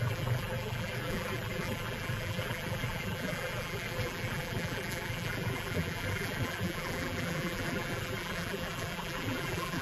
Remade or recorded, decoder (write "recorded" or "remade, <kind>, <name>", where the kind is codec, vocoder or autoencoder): remade, vocoder, BigVGAN v2